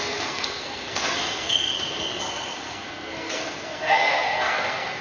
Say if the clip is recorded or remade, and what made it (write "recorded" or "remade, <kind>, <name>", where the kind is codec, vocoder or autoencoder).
remade, codec, SNAC